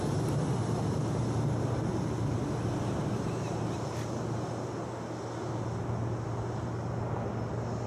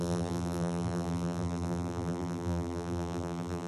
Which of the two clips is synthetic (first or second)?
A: second